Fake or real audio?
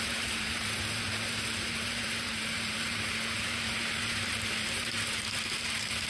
fake